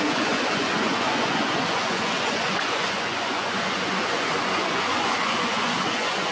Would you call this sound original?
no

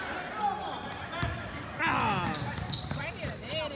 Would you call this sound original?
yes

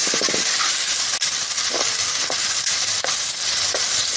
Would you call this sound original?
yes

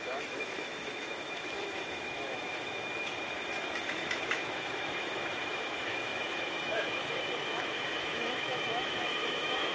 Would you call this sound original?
no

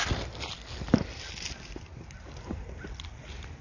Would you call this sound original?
yes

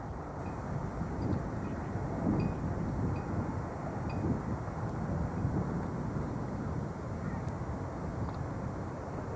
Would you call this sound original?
yes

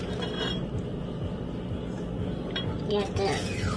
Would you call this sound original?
yes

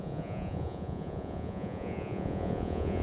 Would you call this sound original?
no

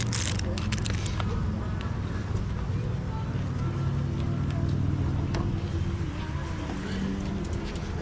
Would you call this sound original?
yes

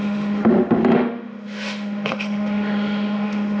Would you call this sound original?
no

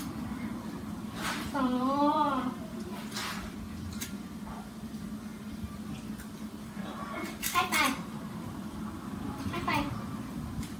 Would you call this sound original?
no